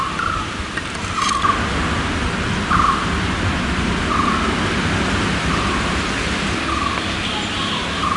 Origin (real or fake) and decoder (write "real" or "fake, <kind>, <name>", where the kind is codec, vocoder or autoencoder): real